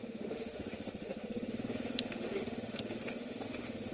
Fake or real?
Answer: fake